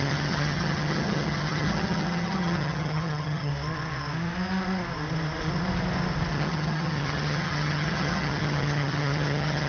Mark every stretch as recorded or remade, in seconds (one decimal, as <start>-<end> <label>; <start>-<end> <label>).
0.0-3.5 remade; 3.5-6.3 recorded; 6.3-9.7 remade